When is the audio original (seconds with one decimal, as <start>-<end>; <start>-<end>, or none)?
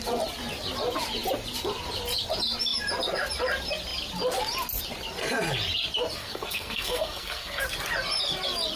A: 0.0-6.2; 7.6-8.8